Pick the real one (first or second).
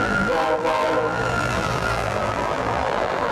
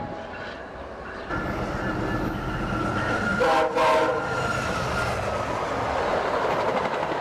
second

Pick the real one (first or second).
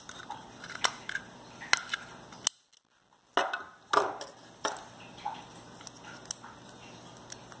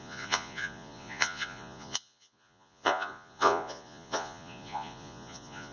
first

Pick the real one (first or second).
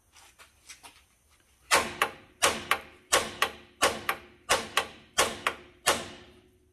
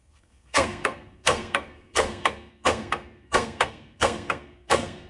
first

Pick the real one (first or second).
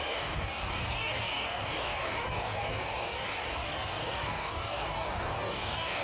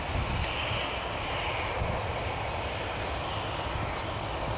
second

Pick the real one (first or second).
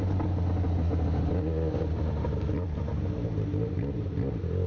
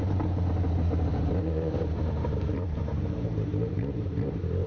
first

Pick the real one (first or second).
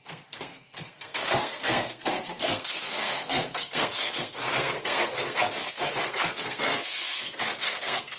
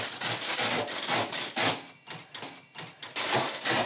second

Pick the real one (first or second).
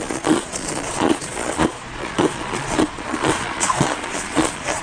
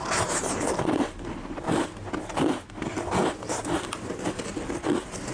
second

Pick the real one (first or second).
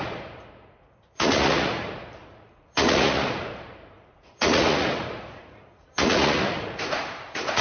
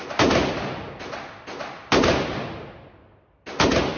second